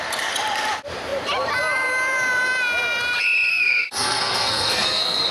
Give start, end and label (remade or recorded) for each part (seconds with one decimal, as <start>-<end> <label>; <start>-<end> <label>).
0.0-3.5 recorded; 3.5-5.3 remade